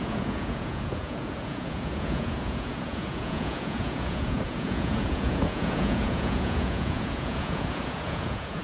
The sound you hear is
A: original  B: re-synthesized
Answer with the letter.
B